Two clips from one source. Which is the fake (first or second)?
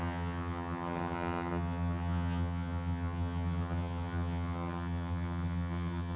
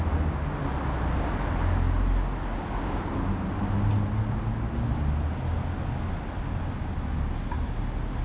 first